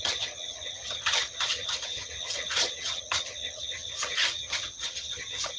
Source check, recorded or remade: remade